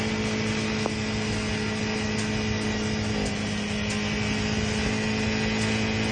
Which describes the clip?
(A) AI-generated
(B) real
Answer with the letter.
B